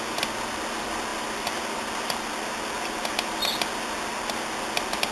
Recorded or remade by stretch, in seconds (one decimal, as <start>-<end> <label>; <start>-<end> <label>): 0.0-5.1 recorded